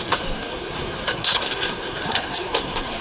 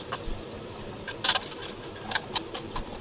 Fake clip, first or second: first